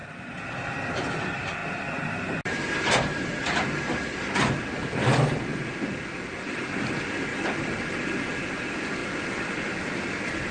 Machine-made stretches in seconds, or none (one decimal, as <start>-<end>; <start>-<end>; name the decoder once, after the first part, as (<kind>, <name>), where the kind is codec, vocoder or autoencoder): 0.9-10.5 (vocoder, BigVGAN v2)

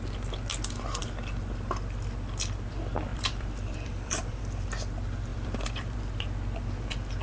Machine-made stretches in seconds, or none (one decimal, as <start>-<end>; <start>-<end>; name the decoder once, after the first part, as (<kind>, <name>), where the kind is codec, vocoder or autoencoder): 3.1-4.4 (vocoder, BigVGAN v2); 5.3-6.0

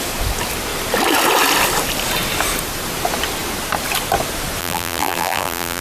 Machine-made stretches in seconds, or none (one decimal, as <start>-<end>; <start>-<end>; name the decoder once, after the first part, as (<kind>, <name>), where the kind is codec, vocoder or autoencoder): 4.6-5.8 (vocoder, BigVGAN v2)

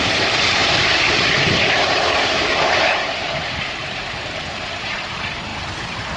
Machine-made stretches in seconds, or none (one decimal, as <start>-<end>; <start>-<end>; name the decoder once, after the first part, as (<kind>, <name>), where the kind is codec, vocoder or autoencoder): 0.0-3.8 (vocoder, BigVGAN v2); 5.0-5.5

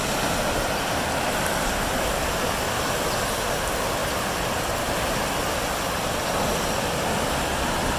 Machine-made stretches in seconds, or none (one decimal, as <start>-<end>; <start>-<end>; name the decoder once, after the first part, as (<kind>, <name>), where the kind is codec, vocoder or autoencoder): 4.0-5.2 (vocoder, BigVGAN v2)

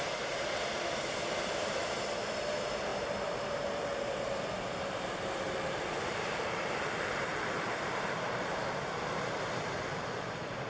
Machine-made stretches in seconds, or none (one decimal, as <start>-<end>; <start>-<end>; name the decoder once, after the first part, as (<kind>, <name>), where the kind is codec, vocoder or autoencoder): 0.0-2.9 (vocoder, BigVGAN v2); 3.5-10.7